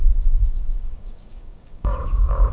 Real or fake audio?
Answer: fake